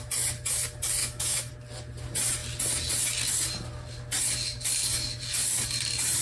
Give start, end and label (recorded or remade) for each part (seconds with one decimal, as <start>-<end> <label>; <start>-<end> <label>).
0.0-1.0 recorded; 1.0-1.5 remade; 1.5-6.2 recorded